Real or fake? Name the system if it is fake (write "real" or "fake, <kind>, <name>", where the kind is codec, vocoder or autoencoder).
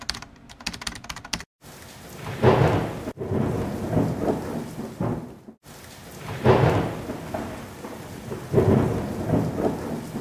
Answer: real